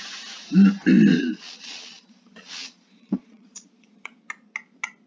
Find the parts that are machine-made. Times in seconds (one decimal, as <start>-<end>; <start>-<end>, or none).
1.1-4.2